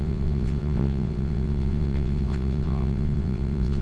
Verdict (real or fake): fake